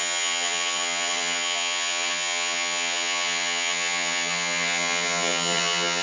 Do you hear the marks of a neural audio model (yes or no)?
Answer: yes